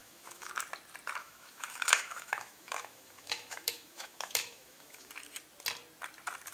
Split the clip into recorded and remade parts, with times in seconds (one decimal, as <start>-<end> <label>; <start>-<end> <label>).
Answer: 0.0-0.5 remade; 0.5-1.2 recorded; 1.2-5.1 remade; 5.1-6.5 recorded